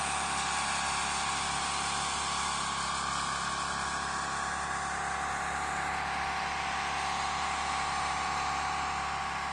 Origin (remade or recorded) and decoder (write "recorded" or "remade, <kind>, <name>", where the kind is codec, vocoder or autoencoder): recorded